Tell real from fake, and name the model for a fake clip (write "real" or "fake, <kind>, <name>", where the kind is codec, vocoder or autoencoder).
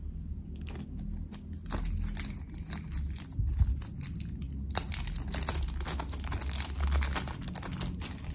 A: real